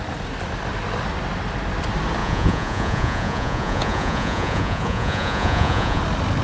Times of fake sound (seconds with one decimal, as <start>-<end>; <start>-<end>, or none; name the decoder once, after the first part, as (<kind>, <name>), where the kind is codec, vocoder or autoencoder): 2.2-6.0 (vocoder, Vocos)